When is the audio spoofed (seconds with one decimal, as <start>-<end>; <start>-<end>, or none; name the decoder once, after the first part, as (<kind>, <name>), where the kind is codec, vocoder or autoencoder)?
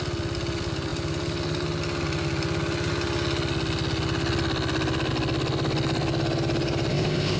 6.9-7.4 (codec, ZipCodec)